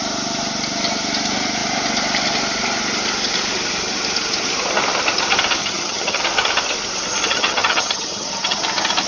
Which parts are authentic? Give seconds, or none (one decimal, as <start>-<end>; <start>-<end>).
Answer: 0.0-5.6; 6.2-7.3; 8.6-9.1